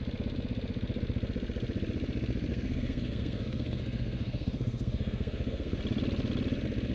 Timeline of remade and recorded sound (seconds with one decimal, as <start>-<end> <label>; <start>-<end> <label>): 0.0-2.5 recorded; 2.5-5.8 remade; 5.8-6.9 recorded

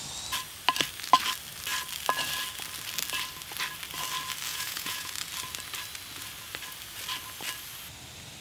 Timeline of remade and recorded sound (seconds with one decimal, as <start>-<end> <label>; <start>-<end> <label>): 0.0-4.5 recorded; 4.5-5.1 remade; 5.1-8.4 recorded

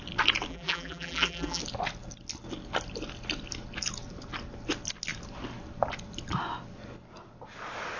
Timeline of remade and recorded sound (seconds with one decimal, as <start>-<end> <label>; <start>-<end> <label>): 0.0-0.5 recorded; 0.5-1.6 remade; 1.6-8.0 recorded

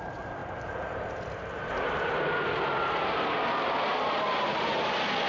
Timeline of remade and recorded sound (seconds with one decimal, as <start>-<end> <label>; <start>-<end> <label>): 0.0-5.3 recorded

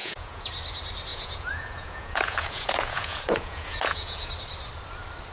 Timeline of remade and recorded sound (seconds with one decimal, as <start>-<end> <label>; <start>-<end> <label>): 0.0-0.5 remade; 0.5-1.1 recorded; 1.1-4.3 remade; 4.3-5.3 recorded

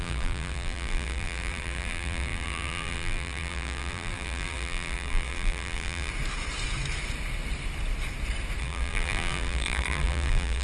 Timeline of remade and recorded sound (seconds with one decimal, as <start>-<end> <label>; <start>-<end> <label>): 0.0-6.1 remade; 6.1-8.6 recorded; 8.6-10.6 remade

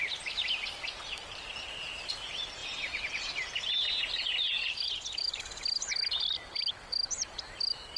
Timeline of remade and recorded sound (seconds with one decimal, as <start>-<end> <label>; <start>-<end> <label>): 0.0-2.6 remade; 2.6-3.2 recorded; 3.2-8.0 remade

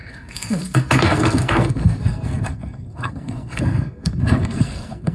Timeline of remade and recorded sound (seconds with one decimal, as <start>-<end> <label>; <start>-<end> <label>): 0.0-5.1 remade